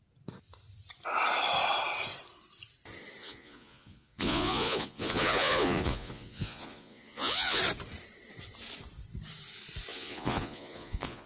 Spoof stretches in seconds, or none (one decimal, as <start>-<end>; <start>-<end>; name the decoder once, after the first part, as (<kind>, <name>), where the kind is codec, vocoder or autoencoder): 3.2-7.6 (vocoder, Vocos); 9.9-11.3

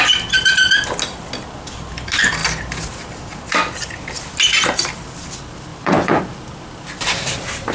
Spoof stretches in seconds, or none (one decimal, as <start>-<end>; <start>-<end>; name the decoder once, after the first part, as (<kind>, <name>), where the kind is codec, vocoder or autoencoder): 5.7-6.2 (vocoder, Vocos)

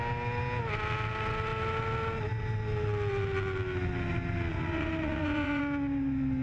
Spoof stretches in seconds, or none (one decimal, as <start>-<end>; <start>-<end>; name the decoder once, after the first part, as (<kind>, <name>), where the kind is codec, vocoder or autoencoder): 4.5-5.6 (vocoder, Vocos)

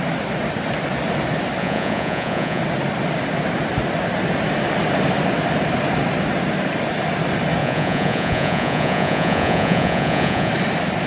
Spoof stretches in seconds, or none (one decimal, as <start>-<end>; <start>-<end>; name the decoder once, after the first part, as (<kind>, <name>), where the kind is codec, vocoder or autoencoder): 1.6-2.6 (vocoder, Vocos); 7.6-10.5

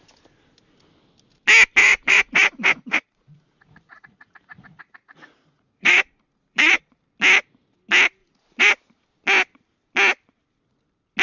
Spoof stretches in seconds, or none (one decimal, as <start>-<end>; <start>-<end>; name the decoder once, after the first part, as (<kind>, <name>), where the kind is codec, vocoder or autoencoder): 1.8-6.8 (vocoder, Vocos); 8.2-8.7

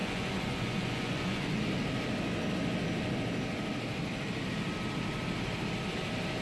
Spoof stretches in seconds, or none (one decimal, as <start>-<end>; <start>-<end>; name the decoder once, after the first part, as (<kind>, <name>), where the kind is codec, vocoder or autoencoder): 0.0-1.6 (vocoder, Vocos)

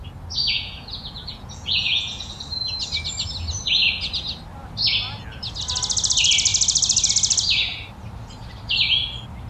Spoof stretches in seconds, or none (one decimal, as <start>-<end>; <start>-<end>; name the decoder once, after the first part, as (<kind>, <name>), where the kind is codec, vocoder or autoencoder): 0.4-2.3 (vocoder, Vocos)

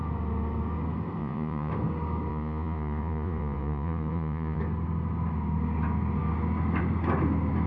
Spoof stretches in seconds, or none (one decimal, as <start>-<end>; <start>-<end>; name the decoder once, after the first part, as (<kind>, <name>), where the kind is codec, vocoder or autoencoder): 1.2-1.7 (vocoder, Vocos); 2.3-4.6